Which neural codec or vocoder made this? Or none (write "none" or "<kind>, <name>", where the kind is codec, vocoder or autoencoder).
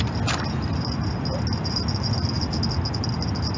none